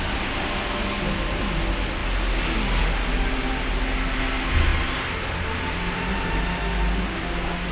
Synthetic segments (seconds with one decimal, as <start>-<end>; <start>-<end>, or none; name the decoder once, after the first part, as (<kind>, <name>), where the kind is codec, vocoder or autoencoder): none